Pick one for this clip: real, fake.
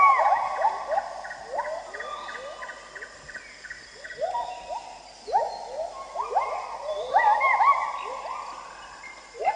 real